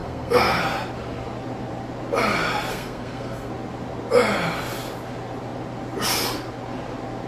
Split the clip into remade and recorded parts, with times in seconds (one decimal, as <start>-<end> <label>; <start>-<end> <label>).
0.0-0.6 remade; 0.6-2.7 recorded; 2.7-3.5 remade; 3.5-7.3 recorded